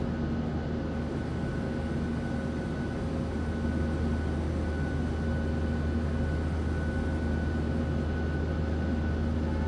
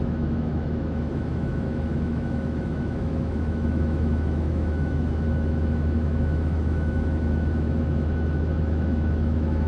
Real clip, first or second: first